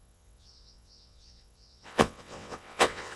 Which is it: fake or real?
fake